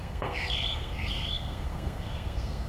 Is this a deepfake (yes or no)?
yes